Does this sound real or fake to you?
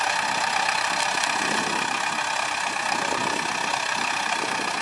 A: real